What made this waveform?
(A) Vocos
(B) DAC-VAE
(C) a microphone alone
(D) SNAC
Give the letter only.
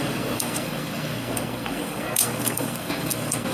D